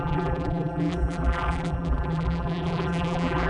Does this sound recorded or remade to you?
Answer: remade